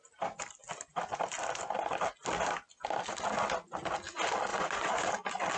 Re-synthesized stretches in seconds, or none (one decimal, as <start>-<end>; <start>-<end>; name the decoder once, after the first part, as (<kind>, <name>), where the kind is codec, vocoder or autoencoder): 4.5-5.1 (vocoder, Vocos)

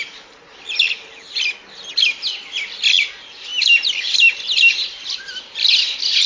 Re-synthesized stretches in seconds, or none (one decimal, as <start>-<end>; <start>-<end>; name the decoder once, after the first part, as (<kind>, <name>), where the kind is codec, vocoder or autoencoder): none